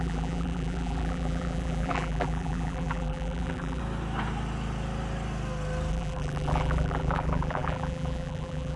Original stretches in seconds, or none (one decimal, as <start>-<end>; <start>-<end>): 3.8-5.9